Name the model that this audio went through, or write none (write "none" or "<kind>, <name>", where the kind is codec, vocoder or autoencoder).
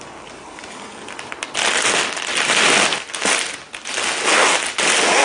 none